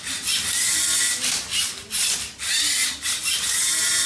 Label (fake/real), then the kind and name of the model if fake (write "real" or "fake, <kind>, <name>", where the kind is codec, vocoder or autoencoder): real